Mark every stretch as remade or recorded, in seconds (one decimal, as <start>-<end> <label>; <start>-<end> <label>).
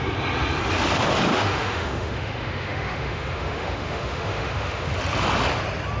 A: 0.0-1.3 recorded; 1.3-4.9 remade; 4.9-6.0 recorded